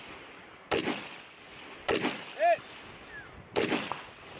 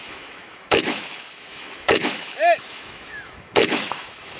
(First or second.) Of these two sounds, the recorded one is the first